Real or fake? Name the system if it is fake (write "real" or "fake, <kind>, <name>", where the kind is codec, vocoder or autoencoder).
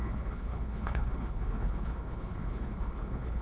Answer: fake, codec, HILCodec